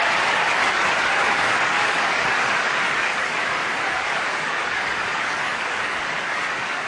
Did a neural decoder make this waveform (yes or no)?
yes